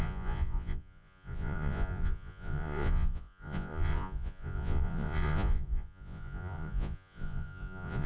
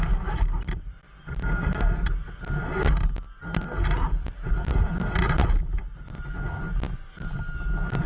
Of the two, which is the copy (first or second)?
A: first